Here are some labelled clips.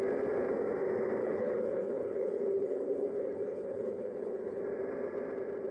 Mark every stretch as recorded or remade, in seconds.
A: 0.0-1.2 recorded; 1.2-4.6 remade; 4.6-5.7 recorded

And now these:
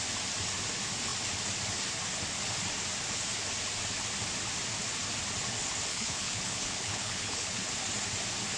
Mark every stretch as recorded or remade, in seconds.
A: 0.0-5.9 recorded; 5.9-7.7 remade; 7.7-8.6 recorded

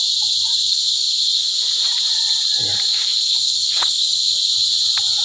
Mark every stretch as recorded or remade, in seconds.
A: 0.0-0.7 recorded; 0.7-1.6 remade; 1.6-2.9 recorded; 2.9-4.2 remade; 4.2-5.2 recorded

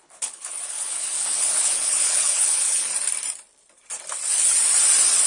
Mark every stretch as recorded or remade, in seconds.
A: 0.0-2.9 remade; 2.9-5.3 recorded

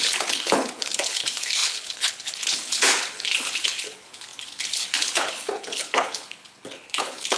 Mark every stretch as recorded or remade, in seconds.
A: 0.0-7.4 remade

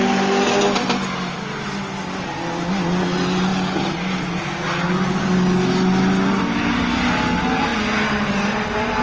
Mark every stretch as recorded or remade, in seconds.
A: 0.0-9.0 recorded

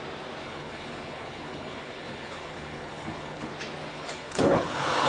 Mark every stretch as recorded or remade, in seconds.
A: 0.0-0.4 recorded; 0.4-3.5 remade; 3.5-3.9 recorded; 3.9-5.1 remade